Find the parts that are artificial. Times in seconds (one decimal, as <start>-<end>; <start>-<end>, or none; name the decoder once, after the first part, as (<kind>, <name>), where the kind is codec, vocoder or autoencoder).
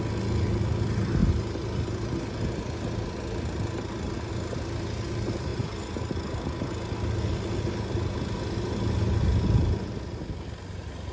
none